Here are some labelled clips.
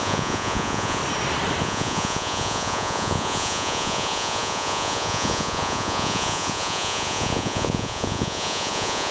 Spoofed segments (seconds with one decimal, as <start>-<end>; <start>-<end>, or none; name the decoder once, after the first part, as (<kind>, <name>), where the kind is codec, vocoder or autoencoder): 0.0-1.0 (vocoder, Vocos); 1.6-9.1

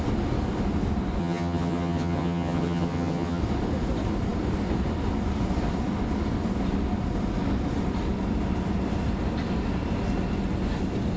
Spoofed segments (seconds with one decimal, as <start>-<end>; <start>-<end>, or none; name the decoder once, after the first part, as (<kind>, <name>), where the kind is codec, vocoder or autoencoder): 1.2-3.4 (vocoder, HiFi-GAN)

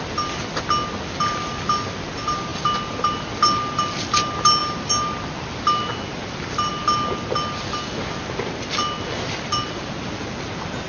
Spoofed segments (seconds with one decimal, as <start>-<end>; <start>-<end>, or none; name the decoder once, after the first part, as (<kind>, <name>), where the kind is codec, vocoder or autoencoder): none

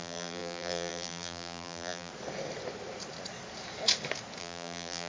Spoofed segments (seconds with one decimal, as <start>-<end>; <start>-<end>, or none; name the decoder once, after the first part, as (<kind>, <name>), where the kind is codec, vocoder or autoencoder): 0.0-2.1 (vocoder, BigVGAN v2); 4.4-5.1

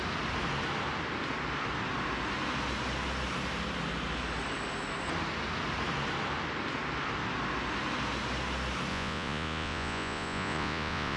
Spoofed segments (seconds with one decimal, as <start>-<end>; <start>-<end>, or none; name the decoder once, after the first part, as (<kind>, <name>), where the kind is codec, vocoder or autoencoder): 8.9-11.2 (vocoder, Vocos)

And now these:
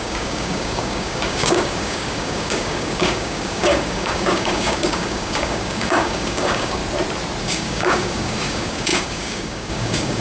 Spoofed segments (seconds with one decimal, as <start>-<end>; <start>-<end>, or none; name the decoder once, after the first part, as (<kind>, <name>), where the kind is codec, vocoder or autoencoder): 0.0-6.8 (codec, DAC); 7.4-10.2